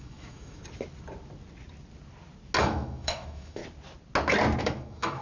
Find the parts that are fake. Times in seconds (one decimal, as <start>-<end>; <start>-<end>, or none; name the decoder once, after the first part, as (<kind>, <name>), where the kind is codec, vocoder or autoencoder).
0.0-0.6 (autoencoder, DAC-VAE); 2.6-3.6; 4.6-5.2